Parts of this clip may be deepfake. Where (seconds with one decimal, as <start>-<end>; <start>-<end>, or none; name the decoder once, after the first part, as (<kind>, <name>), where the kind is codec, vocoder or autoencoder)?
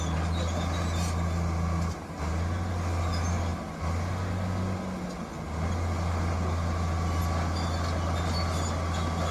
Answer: none